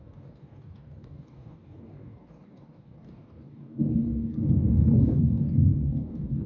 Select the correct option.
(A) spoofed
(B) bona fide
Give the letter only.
A